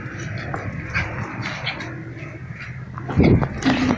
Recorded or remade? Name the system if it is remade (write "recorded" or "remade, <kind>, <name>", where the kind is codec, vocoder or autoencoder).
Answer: recorded